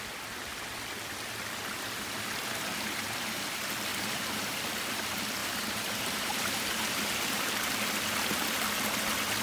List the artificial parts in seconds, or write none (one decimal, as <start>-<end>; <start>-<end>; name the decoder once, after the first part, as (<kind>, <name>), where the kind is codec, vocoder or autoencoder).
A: 3.9-4.9 (vocoder, BigVGAN v2); 5.4-7.5